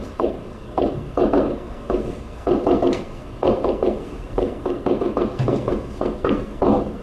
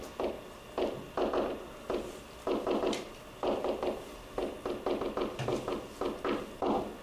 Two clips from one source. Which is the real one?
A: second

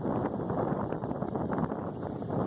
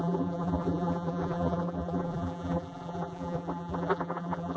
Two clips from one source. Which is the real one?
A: first